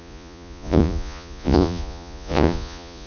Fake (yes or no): yes